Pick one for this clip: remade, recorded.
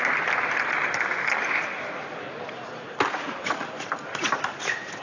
recorded